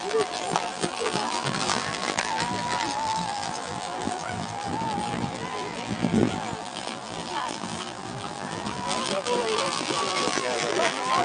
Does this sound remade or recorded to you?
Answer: remade